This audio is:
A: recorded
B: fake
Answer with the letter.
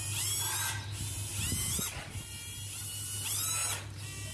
A